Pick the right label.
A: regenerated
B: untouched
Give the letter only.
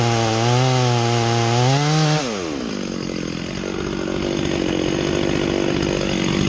B